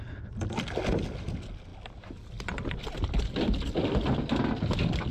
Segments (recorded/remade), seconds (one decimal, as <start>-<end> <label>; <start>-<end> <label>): 0.0-5.1 recorded